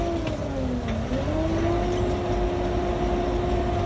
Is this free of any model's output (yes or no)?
yes